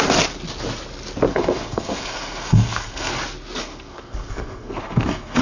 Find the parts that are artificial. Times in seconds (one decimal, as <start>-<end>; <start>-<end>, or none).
1.3-3.1; 3.6-5.4